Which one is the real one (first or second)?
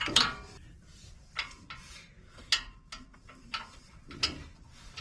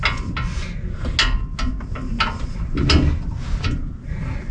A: second